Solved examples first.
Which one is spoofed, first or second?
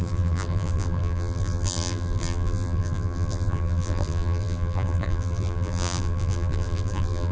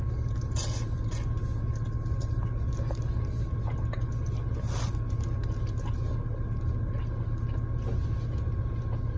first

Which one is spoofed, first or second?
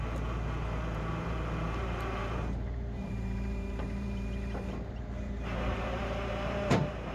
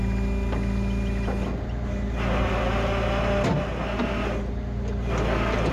first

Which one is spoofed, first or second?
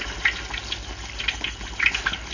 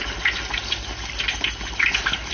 second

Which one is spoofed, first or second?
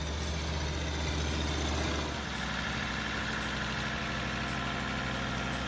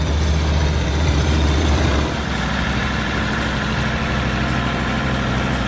second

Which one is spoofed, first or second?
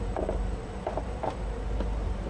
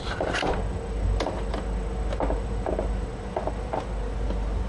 first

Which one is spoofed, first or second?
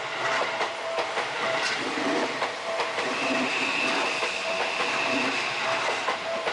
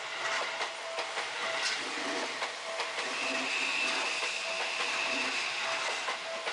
first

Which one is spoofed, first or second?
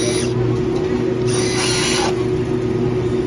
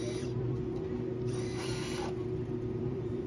second